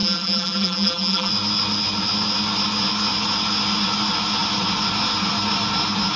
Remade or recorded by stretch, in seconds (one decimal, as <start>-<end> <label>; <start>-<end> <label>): 0.0-1.3 remade; 1.3-6.2 recorded